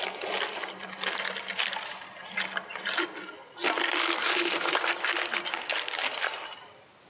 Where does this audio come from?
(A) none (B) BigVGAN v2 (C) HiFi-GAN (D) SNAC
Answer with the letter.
A